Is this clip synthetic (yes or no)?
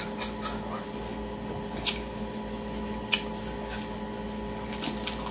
no